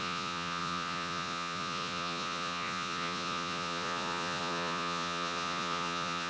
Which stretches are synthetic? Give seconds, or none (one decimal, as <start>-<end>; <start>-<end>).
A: 0.0-6.3